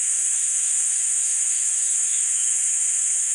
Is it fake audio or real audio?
fake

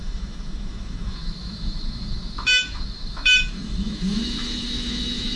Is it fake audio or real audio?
fake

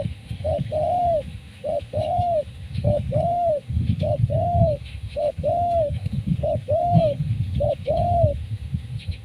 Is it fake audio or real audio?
fake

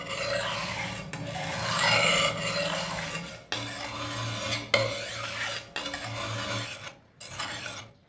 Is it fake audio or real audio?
real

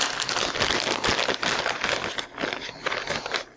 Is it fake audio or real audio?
real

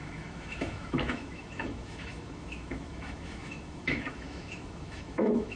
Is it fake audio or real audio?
fake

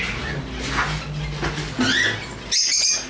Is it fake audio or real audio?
real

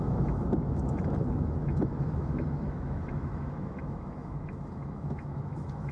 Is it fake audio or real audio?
fake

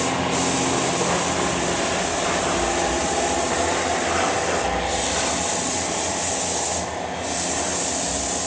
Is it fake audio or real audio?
real